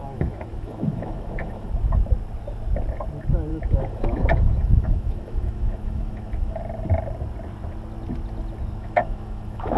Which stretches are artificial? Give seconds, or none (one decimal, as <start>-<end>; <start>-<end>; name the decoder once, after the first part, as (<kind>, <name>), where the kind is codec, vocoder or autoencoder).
0.0-1.7 (autoencoder, DAC-VAE); 3.5-6.6; 8.8-9.8